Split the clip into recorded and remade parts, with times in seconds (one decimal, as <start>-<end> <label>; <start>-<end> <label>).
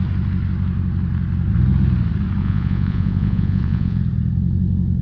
0.0-2.4 recorded; 2.4-4.0 remade; 4.0-5.0 recorded